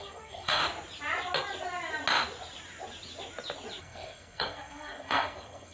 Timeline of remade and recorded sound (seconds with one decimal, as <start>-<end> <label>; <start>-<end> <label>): 0.0-0.6 remade; 0.6-3.8 recorded; 3.8-5.7 remade